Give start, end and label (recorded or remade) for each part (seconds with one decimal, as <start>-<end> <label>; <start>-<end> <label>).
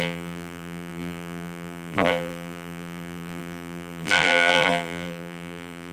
0.0-5.9 remade